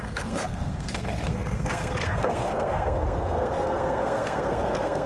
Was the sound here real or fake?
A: fake